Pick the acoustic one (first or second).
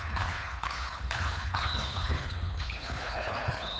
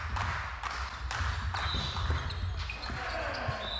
second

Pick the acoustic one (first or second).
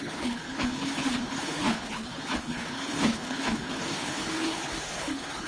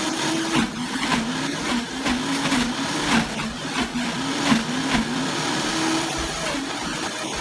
second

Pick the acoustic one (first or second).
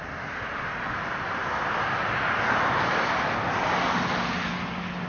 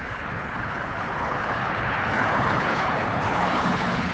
first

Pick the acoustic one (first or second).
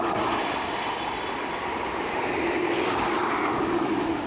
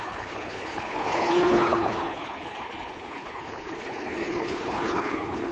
first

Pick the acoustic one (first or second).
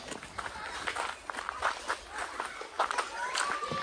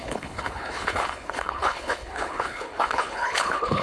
first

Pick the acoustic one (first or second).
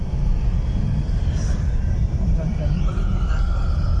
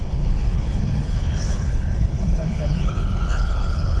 first